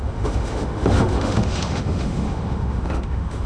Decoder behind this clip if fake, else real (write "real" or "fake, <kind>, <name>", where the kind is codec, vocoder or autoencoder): fake, autoencoder, DAC-VAE